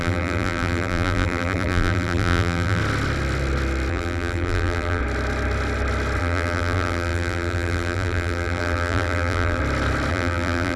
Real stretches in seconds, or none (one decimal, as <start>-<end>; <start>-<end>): 2.8-3.9; 5.0-6.2; 9.6-10.1